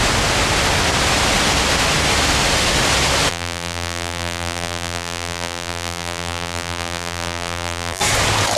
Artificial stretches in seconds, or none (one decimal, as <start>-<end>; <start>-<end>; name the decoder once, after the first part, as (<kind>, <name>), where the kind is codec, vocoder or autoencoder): 3.3-8.0 (vocoder, BigVGAN v2)